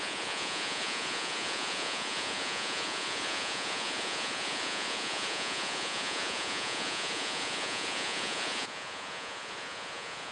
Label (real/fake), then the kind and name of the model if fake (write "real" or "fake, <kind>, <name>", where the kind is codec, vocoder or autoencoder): fake, vocoder, Vocos